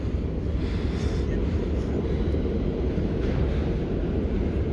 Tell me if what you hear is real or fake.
real